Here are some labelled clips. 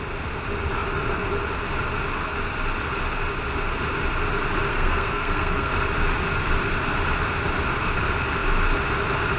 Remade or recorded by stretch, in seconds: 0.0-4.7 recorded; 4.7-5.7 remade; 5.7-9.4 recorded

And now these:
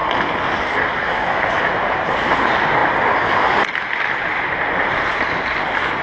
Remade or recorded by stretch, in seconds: 0.0-1.5 recorded; 1.5-2.8 remade; 2.8-4.2 recorded; 4.2-4.8 remade; 4.8-6.0 recorded

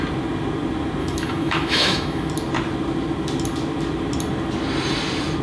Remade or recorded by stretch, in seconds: 0.0-1.0 recorded; 1.0-2.3 remade; 2.3-5.4 recorded

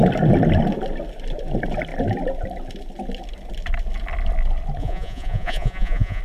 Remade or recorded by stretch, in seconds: 0.0-4.8 recorded; 4.8-6.2 remade

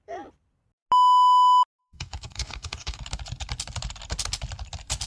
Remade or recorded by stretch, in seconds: 0.0-1.8 recorded; 1.8-3.0 remade; 3.0-5.1 recorded